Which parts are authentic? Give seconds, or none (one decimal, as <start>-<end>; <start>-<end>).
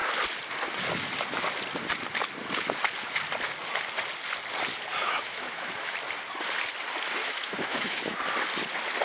0.0-5.0; 5.7-7.2; 8.2-9.0